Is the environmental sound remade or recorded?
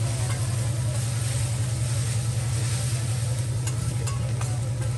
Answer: recorded